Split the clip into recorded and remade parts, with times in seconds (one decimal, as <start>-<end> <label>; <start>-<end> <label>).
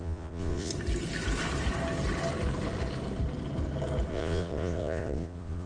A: 0.0-0.7 remade; 0.7-4.1 recorded; 4.1-5.7 remade